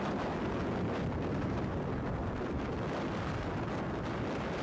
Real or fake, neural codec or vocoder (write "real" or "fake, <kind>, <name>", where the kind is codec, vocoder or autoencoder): real